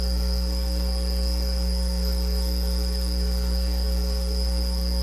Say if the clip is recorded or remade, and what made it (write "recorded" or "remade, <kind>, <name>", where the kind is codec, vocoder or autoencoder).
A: remade, codec, SNAC